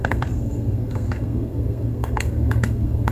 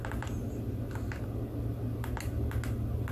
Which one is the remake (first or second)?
first